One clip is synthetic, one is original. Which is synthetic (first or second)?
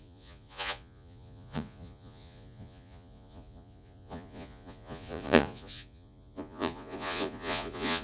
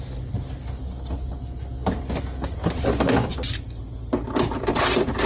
first